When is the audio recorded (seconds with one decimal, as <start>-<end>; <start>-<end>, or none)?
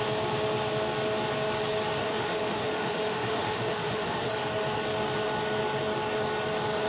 0.0-2.0; 4.3-6.9